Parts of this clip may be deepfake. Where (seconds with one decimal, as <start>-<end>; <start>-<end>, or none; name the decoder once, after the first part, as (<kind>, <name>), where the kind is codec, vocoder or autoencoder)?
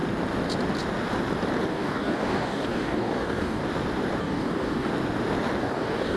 1.7-3.6 (codec, DAC); 4.2-4.9; 5.6-6.2